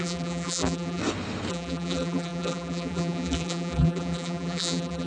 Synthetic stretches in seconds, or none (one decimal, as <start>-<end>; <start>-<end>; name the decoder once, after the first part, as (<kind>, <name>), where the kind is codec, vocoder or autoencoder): 0.0-1.0 (vocoder, BigVGAN v2); 1.5-5.1

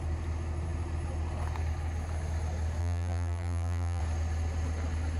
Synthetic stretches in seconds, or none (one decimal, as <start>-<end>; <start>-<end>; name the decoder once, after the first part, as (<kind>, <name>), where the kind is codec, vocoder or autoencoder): 2.8-4.0 (vocoder, BigVGAN v2)

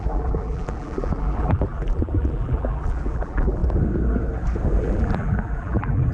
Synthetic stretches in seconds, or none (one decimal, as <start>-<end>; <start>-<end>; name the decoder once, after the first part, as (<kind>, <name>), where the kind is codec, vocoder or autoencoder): 0.0-3.6 (vocoder, BigVGAN v2); 4.8-6.1

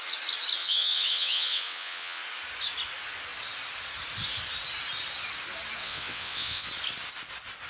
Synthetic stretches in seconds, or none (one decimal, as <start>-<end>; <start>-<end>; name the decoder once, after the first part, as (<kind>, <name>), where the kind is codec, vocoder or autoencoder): 0.6-2.2 (vocoder, WaveNeXt); 5.8-6.7

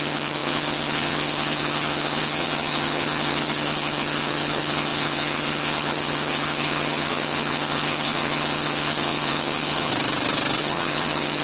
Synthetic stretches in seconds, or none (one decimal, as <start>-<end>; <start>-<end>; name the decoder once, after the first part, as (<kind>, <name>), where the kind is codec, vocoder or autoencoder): 0.0-9.9 (vocoder, HiFi-GAN); 10.6-11.4

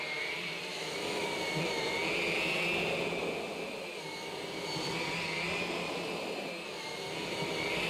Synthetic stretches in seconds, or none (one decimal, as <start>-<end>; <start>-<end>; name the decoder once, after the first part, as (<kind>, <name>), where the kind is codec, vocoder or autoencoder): 0.7-1.2 (autoencoder, DAC-VAE)